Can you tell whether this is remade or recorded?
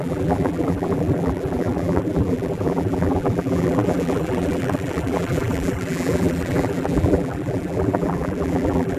remade